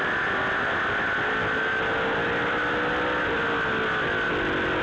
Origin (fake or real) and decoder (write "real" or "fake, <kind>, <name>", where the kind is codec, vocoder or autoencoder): real